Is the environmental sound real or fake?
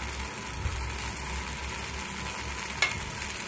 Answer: real